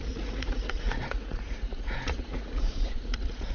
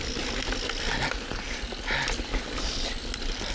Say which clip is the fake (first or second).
first